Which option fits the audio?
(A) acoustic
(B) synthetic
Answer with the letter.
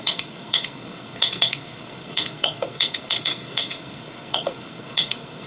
B